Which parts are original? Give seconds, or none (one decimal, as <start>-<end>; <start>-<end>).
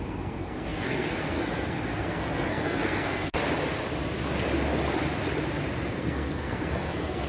3.4-5.9